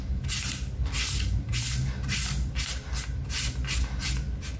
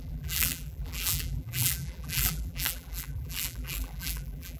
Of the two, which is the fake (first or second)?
second